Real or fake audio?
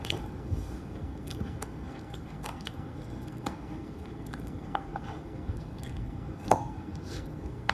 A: fake